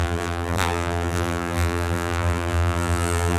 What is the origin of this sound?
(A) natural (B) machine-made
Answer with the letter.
B